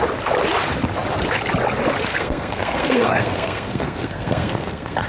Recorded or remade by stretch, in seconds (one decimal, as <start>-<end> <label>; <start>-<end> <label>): 0.0-2.1 recorded; 2.1-5.1 remade